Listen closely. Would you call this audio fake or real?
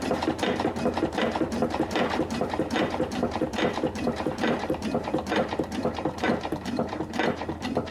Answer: fake